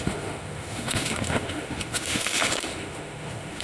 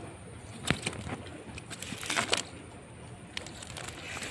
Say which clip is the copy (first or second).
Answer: first